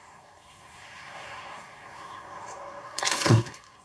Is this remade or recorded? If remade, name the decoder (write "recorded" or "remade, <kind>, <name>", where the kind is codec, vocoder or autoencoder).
remade, codec, SNAC